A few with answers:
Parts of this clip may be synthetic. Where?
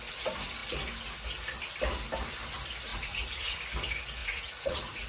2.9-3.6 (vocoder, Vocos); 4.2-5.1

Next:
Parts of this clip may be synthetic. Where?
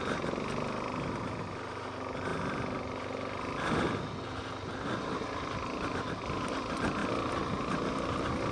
none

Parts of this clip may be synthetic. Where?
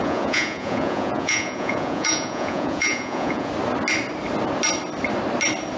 0.0-3.5 (vocoder, Vocos)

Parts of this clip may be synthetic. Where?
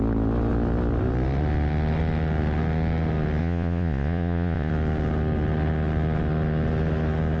3.4-4.7 (vocoder, Vocos)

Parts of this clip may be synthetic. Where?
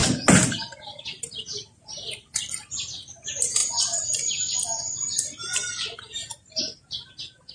none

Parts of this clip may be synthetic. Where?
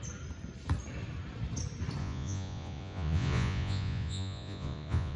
2.0-5.2 (vocoder, Vocos)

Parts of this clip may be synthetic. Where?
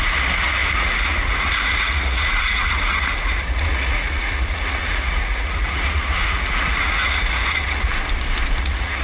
0.0-7.9 (vocoder, Vocos); 8.6-9.0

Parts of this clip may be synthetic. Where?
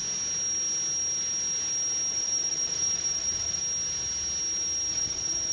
2.1-3.6 (vocoder, Vocos); 4.9-5.5